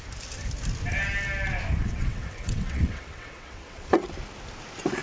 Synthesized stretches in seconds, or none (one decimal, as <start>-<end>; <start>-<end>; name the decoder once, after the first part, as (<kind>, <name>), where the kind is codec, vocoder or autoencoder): 1.8-4.0 (vocoder, WaveNeXt)